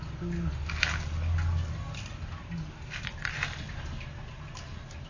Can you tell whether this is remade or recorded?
recorded